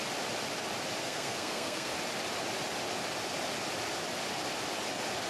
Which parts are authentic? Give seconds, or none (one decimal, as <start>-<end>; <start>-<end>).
0.0-1.0; 1.9-5.3